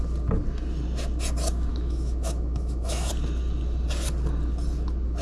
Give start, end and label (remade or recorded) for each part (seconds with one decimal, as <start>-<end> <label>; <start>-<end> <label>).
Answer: 0.0-1.7 recorded; 1.7-3.1 remade; 3.1-5.2 recorded